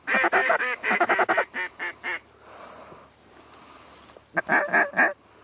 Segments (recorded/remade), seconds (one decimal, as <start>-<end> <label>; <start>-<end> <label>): 0.0-0.4 recorded; 0.4-1.3 remade; 1.3-5.4 recorded

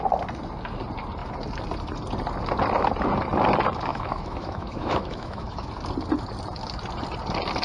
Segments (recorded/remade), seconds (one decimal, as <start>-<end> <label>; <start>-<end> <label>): 0.0-3.9 recorded; 3.9-5.7 remade; 5.7-7.6 recorded